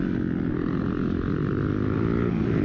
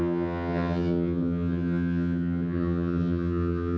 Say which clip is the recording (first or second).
first